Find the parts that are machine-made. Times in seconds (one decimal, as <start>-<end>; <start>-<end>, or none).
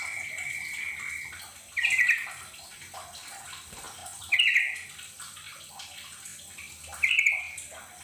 none